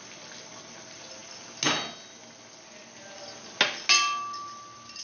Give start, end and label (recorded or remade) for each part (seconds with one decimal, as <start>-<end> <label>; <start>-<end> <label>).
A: 0.0-5.0 recorded